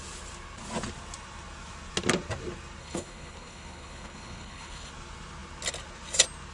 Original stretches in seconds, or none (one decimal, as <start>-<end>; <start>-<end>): 0.0-2.8; 4.9-6.5